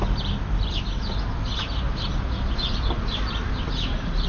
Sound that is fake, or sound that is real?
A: real